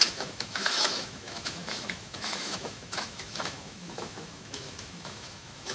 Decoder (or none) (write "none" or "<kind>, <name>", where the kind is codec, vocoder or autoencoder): autoencoder, DAC-VAE